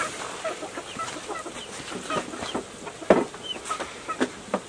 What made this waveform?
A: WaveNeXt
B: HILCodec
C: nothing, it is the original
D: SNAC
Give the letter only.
C